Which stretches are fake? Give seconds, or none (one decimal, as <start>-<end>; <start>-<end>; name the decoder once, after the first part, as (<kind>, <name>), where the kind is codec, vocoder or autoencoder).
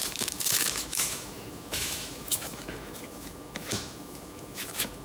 0.0-5.0 (autoencoder, DAC-VAE)